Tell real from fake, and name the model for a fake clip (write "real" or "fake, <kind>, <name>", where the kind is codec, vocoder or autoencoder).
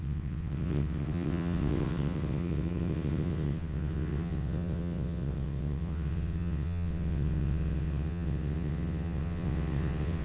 fake, vocoder, WaveNeXt